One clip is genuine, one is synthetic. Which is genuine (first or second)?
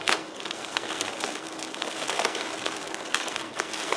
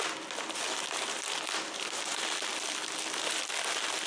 second